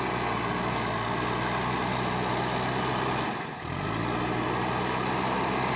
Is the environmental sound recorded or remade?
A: recorded